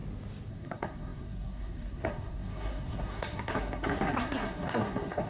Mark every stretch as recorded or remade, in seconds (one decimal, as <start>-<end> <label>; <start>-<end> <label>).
0.0-0.5 recorded; 0.5-5.3 remade

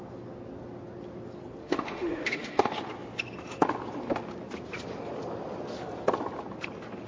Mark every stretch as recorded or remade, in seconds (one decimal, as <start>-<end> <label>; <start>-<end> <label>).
0.0-1.6 recorded; 1.6-2.9 remade; 2.9-7.1 recorded

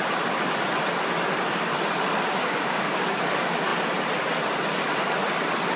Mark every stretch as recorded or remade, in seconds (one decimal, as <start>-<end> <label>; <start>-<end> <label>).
0.0-2.4 recorded; 2.4-3.2 remade; 3.2-5.8 recorded

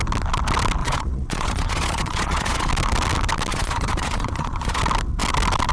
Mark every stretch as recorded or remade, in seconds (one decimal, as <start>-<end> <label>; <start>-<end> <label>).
0.0-0.8 recorded; 0.8-2.7 remade; 2.7-3.5 recorded; 3.5-4.8 remade; 4.8-5.7 recorded

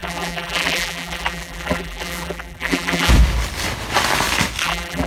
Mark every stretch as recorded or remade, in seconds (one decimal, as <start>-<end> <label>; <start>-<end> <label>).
0.0-3.1 remade; 3.1-4.6 recorded; 4.6-5.1 remade

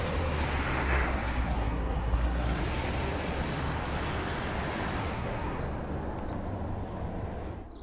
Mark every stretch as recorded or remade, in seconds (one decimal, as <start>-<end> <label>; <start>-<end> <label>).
0.0-0.8 recorded; 0.8-2.6 remade; 2.6-5.0 recorded; 5.0-5.6 remade; 5.6-7.8 recorded